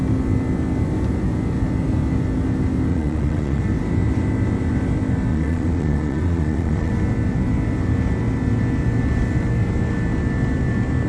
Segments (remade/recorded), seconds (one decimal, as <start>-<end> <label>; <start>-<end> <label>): 0.0-2.9 recorded; 2.9-3.6 remade; 3.6-5.3 recorded; 5.3-6.9 remade; 6.9-11.1 recorded

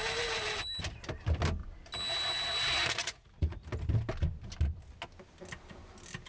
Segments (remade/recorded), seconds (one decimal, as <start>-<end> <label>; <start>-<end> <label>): 0.0-3.0 recorded; 3.0-3.6 remade; 3.6-6.3 recorded